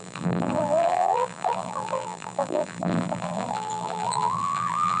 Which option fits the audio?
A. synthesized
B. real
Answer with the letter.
A